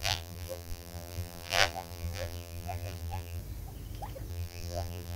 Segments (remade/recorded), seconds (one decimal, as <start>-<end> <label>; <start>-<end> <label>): 0.0-3.4 remade; 3.4-4.3 recorded; 4.3-5.2 remade